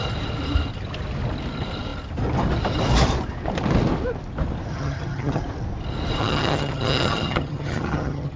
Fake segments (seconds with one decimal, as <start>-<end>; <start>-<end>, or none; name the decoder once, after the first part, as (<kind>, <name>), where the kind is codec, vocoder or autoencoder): 4.7-5.4 (vocoder, HiFi-GAN); 6.2-8.4